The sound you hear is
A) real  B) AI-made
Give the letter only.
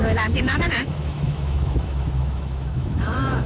B